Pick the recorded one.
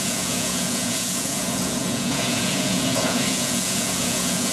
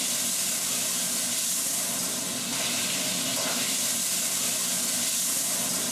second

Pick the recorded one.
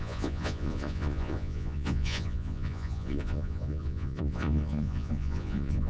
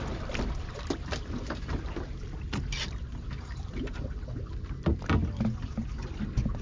second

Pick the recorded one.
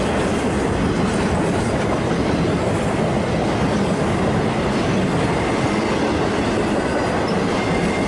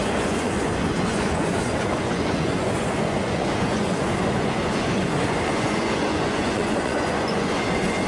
first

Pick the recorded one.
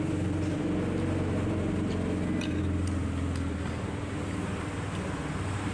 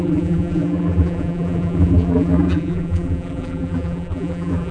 first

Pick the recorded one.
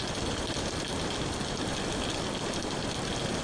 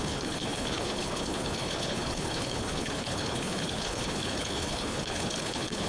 first